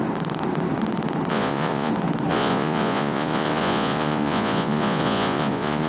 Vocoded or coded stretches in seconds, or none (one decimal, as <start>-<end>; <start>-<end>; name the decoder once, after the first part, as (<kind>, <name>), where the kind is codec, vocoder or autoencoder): 1.3-1.9 (vocoder, Vocos); 2.3-5.9